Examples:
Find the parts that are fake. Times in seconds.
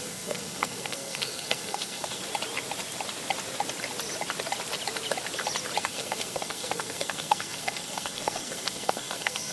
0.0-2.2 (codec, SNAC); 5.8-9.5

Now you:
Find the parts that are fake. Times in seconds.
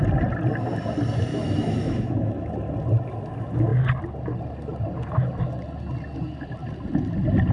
1.3-2.5 (autoencoder, DAC-VAE)